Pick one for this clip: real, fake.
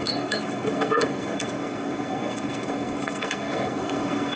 fake